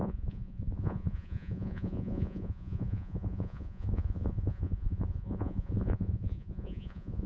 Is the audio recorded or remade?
remade